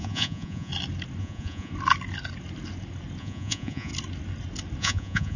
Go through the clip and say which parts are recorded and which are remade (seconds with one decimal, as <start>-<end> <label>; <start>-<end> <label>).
0.0-0.7 remade; 0.7-1.2 recorded; 1.2-1.7 remade; 1.7-3.2 recorded; 3.2-3.9 remade; 3.9-4.8 recorded; 4.8-5.4 remade